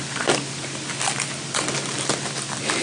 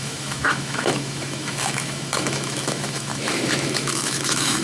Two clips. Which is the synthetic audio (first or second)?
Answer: second